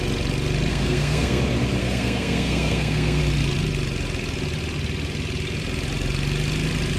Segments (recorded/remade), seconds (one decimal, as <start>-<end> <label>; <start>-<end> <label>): 0.0-0.7 recorded; 0.7-1.4 remade; 1.4-1.8 recorded; 1.8-3.2 remade; 3.2-7.0 recorded